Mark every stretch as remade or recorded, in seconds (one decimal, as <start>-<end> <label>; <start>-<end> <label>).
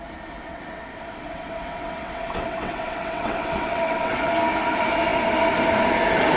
0.0-0.5 recorded; 0.5-4.3 remade; 4.3-6.4 recorded